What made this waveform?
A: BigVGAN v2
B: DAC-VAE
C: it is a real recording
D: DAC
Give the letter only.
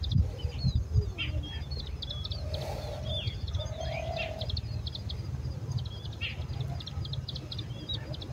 C